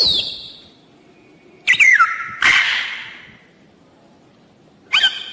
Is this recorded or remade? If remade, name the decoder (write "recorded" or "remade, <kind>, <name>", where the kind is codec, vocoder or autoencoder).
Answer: recorded